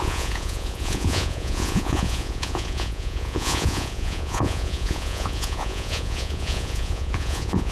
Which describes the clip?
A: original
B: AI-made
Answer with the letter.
B